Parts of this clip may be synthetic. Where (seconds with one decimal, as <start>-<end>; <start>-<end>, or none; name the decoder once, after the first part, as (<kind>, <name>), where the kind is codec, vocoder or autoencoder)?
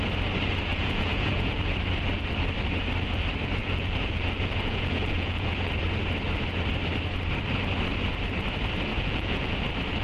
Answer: 0.7-1.6 (vocoder, Vocos); 3.6-5.7; 8.9-9.6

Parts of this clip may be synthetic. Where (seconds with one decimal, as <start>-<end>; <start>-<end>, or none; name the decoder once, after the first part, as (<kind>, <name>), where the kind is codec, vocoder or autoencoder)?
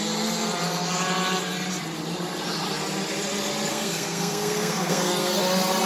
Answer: 3.7-5.4 (codec, SNAC)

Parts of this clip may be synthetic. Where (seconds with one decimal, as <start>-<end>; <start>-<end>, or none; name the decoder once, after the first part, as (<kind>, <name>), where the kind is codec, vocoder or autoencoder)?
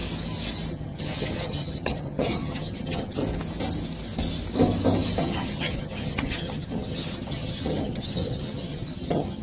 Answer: 0.7-3.2 (vocoder, HiFi-GAN); 5.2-9.4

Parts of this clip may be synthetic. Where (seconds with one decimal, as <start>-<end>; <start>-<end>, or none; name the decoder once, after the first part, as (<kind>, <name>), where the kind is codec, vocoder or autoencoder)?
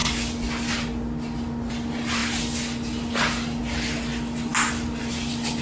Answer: none